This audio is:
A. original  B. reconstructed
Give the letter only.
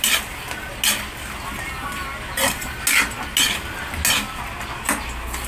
A